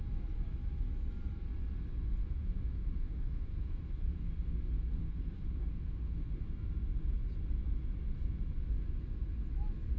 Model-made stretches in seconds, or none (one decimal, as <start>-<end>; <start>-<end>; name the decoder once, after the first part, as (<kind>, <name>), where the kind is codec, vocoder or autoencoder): 2.2-6.4 (autoencoder, DAC-VAE)